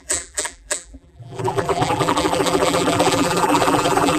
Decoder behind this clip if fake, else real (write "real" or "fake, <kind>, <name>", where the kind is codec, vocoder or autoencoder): fake, vocoder, BigVGAN v2